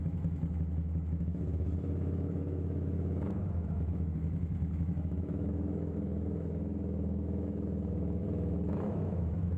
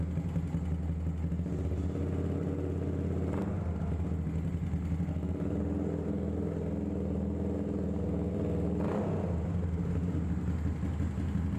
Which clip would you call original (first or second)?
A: second